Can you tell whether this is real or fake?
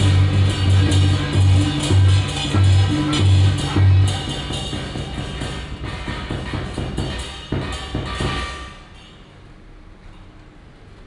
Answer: real